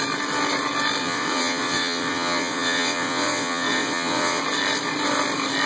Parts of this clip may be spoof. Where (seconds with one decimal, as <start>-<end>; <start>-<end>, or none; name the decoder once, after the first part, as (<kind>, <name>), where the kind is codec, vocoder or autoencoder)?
1.0-4.4 (vocoder, WaveNeXt)